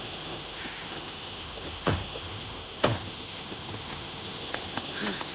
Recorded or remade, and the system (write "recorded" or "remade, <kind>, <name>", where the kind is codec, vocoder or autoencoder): remade, autoencoder, DAC-VAE